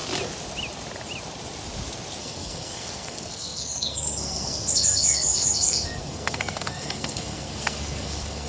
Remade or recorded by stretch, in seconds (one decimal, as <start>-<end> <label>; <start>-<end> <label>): 0.0-2.2 recorded; 2.2-8.5 remade